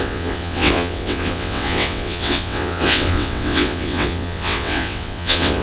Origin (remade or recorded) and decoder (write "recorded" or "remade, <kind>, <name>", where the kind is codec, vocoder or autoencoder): remade, vocoder, WaveNeXt